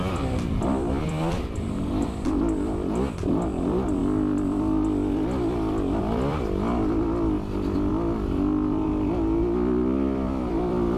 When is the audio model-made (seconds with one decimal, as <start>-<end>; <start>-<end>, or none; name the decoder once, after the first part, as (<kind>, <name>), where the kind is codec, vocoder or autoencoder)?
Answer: 0.0-4.0 (vocoder, BigVGAN v2); 6.0-6.7; 7.9-11.0